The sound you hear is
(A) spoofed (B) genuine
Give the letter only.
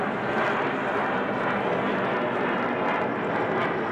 B